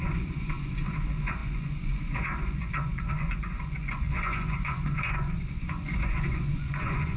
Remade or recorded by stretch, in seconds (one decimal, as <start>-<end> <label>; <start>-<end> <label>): 0.0-7.2 remade

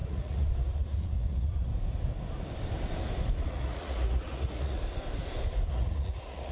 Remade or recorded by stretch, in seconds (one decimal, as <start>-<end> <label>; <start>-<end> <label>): 0.0-1.7 remade; 1.7-3.4 recorded; 3.4-4.8 remade; 4.8-5.7 recorded; 5.7-6.5 remade

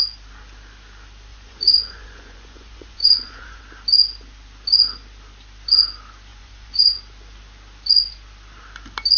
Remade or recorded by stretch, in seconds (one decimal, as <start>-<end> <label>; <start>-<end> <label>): 0.0-1.3 recorded; 1.3-3.6 remade; 3.6-6.3 recorded; 6.3-7.0 remade; 7.0-9.2 recorded